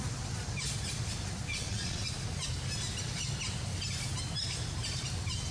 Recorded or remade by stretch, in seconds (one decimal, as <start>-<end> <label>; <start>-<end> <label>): 0.0-1.5 recorded; 1.5-2.1 remade; 2.1-5.5 recorded